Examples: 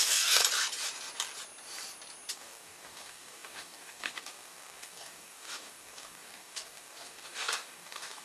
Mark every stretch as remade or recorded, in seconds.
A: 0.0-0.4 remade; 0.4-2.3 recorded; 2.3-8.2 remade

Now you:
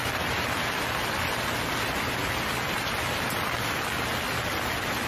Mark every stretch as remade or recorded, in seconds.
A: 0.0-5.1 recorded

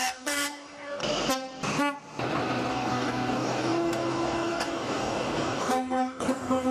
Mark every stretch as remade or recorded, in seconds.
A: 0.0-1.0 remade; 1.0-2.7 recorded; 2.7-6.7 remade